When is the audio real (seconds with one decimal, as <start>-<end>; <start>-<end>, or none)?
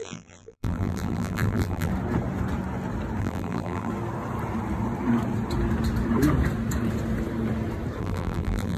1.9-3.2; 3.9-8.0